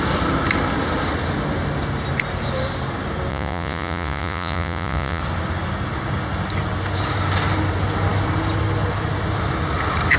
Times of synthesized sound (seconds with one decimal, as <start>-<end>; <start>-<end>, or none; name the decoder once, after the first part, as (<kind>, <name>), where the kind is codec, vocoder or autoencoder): 3.3-5.2 (vocoder, Vocos)